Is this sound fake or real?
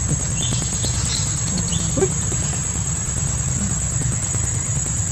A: real